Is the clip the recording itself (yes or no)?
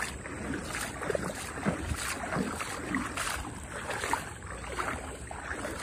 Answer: yes